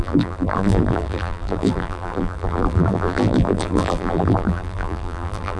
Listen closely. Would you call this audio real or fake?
fake